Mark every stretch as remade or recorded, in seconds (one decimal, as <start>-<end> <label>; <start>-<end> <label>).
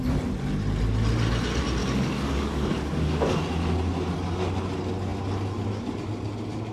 0.0-1.8 recorded; 1.8-3.4 remade; 3.4-6.7 recorded